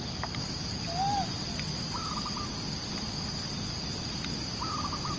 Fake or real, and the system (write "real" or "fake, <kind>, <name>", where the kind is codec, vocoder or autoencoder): real